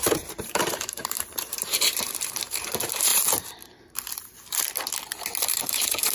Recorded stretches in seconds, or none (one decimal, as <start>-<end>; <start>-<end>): 3.1-5.5